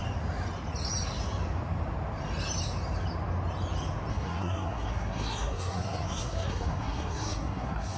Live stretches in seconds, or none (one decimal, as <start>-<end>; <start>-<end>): 0.0-4.1